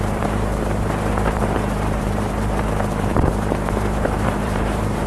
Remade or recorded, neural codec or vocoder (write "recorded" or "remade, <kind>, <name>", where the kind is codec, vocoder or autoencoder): remade, vocoder, BigVGAN v2